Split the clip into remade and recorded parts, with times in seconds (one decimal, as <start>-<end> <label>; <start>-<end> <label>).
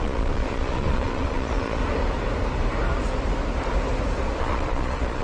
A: 0.0-1.8 remade; 1.8-4.4 recorded; 4.4-5.2 remade